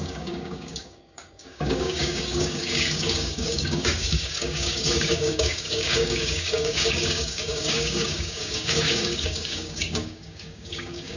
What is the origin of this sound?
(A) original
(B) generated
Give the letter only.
B